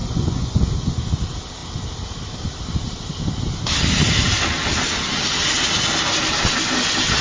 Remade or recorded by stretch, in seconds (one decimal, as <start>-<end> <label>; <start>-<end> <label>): 0.0-0.6 remade; 0.6-7.2 recorded

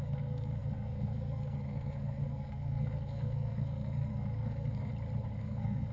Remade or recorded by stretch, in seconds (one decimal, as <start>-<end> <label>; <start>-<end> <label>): 0.0-4.9 remade; 4.9-5.4 recorded; 5.4-5.9 remade